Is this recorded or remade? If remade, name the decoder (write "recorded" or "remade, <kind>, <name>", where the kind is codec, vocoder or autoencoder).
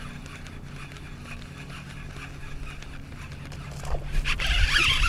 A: recorded